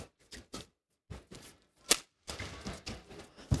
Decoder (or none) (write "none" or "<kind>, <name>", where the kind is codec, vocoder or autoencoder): none